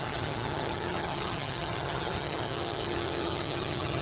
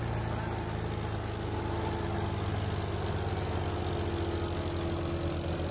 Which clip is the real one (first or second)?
second